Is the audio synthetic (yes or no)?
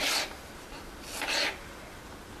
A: yes